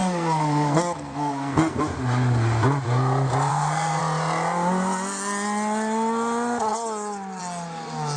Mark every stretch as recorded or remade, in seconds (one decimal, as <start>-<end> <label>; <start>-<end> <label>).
0.0-1.8 remade; 1.8-3.5 recorded; 3.5-4.0 remade; 4.0-8.2 recorded